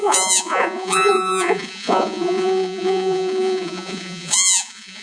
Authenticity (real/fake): fake